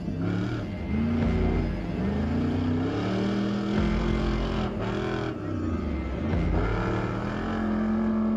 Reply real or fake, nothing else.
real